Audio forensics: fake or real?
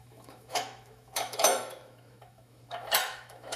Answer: fake